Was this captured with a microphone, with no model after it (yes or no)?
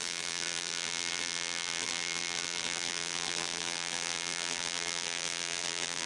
no